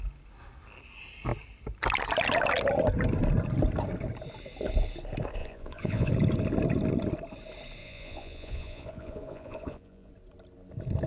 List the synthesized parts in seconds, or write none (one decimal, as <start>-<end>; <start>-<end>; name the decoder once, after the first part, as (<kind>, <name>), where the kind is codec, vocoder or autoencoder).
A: 5.4-6.1 (vocoder, Vocos); 7.8-10.1